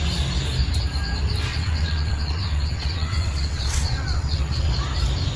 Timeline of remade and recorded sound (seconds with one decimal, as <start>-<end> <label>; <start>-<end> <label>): 0.0-1.5 recorded; 1.5-4.7 remade; 4.7-5.4 recorded